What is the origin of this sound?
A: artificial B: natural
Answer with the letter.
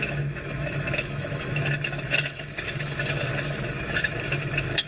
A